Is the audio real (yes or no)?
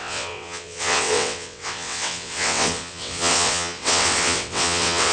no